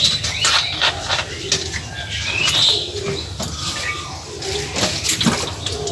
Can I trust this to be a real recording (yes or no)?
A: yes